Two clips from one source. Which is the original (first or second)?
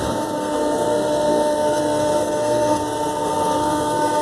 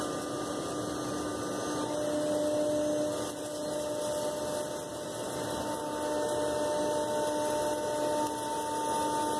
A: second